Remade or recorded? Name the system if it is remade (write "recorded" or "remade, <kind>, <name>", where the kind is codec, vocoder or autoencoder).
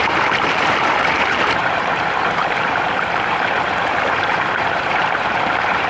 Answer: remade, vocoder, BigVGAN v2